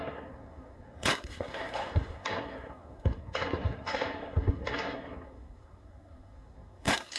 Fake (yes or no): yes